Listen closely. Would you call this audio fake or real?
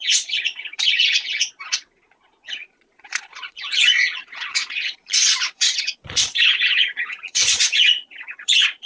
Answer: fake